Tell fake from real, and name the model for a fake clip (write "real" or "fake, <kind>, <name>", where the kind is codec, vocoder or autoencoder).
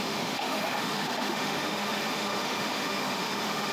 fake, autoencoder, DAC-VAE